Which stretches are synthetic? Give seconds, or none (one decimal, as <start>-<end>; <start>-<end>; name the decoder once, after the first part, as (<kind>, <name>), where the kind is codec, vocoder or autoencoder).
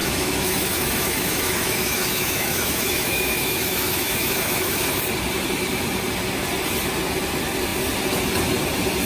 0.0-5.0 (autoencoder, DAC-VAE)